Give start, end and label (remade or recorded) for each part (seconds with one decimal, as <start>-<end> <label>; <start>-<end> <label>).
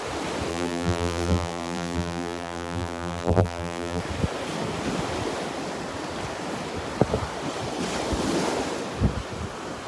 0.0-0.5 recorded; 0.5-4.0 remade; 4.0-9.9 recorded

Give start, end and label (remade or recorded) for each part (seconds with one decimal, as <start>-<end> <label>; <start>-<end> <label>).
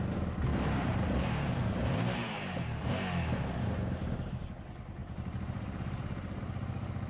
0.0-0.5 recorded; 0.5-2.9 remade; 2.9-5.0 recorded; 5.0-6.4 remade; 6.4-7.1 recorded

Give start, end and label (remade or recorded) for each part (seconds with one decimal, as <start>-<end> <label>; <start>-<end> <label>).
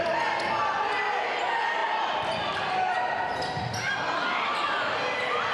0.0-5.5 recorded